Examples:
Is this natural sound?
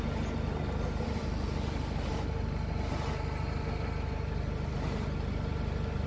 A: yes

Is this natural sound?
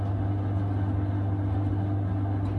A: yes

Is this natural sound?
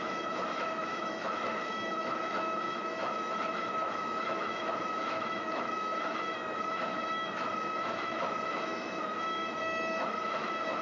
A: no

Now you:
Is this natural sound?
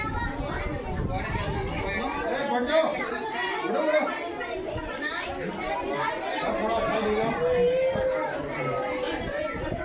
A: yes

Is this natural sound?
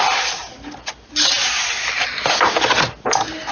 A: yes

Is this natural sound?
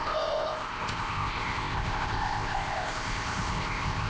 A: no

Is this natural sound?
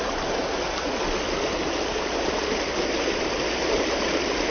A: yes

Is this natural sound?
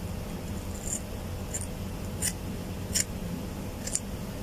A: yes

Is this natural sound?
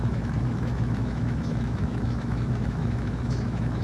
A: no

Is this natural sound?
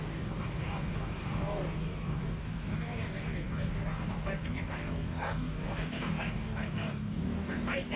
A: no